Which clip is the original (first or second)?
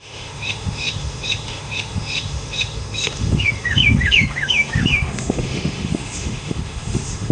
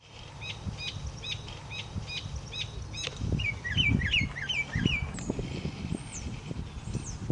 second